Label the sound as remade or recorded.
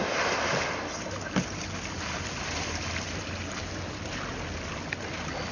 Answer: recorded